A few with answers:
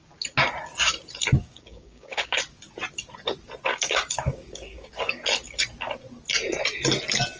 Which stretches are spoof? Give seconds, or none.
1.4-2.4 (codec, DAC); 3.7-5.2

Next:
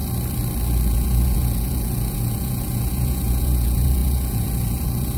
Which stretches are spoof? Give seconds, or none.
0.9-5.2 (vocoder, Vocos)

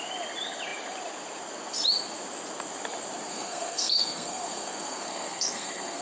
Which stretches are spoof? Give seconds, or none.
3.3-6.0 (codec, SNAC)

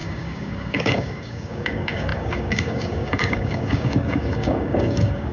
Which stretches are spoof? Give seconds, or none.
0.0-5.3 (codec, DAC)